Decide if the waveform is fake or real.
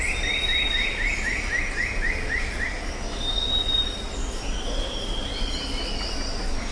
real